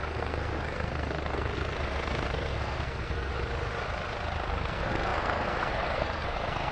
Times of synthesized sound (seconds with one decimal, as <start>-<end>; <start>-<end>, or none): 0.0-3.3; 4.5-6.7